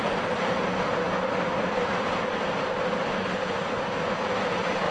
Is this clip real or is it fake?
real